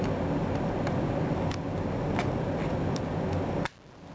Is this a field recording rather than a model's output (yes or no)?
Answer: yes